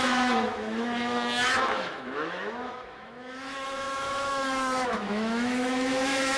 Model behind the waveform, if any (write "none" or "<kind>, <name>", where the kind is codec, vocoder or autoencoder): autoencoder, DAC-VAE